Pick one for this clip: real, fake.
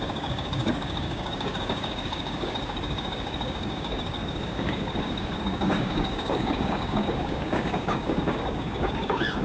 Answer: fake